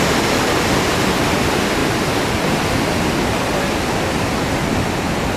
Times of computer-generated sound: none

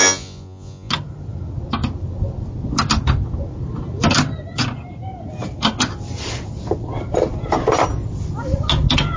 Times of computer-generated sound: 0.0-0.9 (vocoder, Vocos)

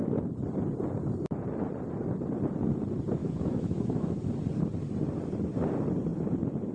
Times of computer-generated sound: 3.2-4.2 (autoencoder, DAC-VAE)

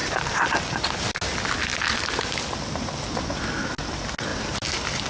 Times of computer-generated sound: 0.0-0.5 (vocoder, BigVGAN v2)

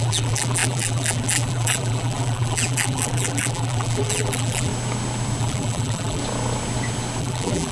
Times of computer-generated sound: 0.0-4.7 (vocoder, BigVGAN v2); 5.4-6.2; 7.2-7.7

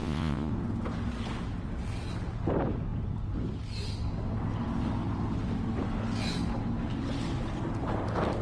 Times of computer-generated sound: 0.0-0.5 (vocoder, Vocos)